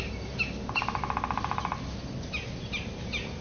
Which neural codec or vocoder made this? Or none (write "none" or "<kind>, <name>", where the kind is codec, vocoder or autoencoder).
none